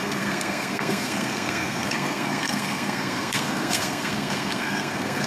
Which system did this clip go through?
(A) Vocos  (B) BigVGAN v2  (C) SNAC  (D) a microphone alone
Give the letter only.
C